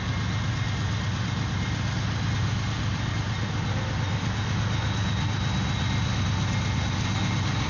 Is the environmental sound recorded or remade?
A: recorded